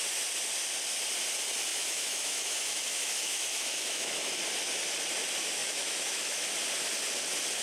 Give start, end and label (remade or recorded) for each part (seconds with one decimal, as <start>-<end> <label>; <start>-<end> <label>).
0.0-1.7 recorded; 1.7-4.3 remade; 4.3-5.6 recorded; 5.6-6.5 remade; 6.5-7.6 recorded

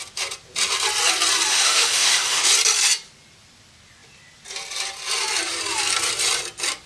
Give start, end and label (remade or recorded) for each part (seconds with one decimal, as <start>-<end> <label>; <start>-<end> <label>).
0.0-1.5 recorded; 1.5-2.5 remade; 2.5-6.9 recorded

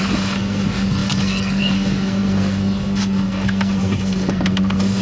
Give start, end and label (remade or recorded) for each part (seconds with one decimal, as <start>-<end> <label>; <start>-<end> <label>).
0.0-5.0 remade

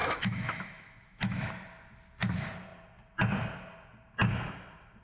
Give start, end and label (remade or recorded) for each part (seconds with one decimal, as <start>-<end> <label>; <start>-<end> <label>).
0.0-1.5 remade; 1.5-5.0 recorded

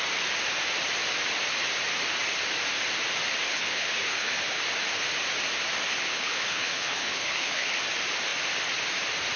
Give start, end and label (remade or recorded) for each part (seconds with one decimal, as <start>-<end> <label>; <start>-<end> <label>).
0.0-3.5 recorded; 3.5-4.6 remade; 4.6-6.1 recorded; 6.1-7.8 remade; 7.8-9.4 recorded

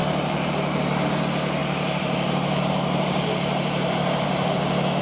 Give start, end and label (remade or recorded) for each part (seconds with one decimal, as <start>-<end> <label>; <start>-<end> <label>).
0.0-1.2 remade; 1.2-1.6 recorded; 1.6-4.6 remade; 4.6-5.0 recorded

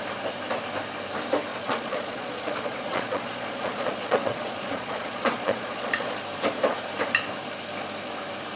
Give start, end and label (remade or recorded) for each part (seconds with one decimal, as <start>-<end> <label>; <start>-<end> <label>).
0.0-1.5 recorded; 1.5-6.2 remade; 6.2-8.6 recorded